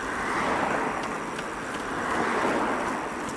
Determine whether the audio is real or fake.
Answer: real